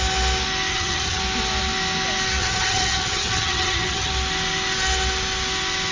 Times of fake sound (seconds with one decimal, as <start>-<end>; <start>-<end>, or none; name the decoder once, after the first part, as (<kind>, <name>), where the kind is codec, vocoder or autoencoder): 0.7-1.2 (vocoder, HiFi-GAN); 2.4-4.1